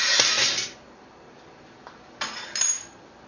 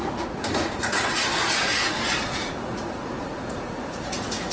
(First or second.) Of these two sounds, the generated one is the second